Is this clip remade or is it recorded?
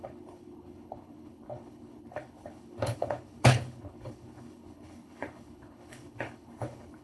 remade